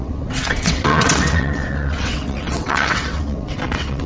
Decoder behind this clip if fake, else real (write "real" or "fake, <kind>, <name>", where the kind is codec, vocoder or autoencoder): fake, vocoder, WaveNeXt